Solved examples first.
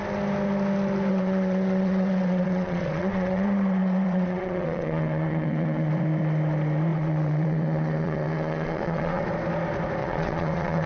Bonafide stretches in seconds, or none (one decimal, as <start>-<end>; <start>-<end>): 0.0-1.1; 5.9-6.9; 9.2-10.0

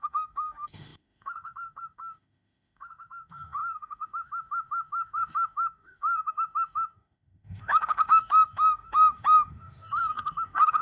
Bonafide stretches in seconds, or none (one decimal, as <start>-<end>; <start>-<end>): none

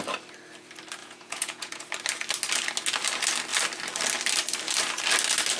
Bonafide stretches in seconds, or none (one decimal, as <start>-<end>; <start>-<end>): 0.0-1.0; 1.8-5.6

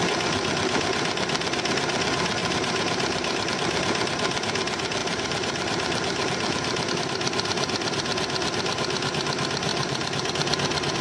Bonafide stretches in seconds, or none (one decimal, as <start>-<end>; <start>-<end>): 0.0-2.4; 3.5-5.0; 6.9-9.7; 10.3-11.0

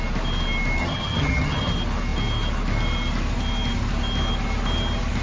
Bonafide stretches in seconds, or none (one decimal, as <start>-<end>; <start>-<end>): 0.0-0.8; 1.7-5.2

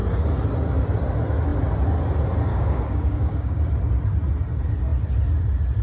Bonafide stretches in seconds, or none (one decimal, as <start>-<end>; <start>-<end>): 0.0-2.5; 3.7-5.8

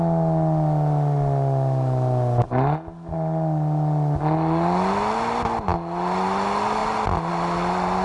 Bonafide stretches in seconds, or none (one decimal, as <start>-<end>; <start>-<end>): 0.0-8.0

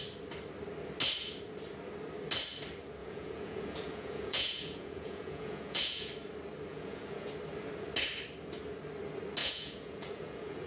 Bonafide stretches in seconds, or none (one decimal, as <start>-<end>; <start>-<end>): 0.0-3.0; 6.1-6.7; 7.3-9.4